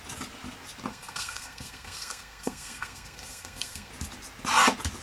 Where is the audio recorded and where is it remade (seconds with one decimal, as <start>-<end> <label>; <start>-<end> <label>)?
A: 0.0-0.9 recorded; 0.9-3.9 remade; 3.9-5.0 recorded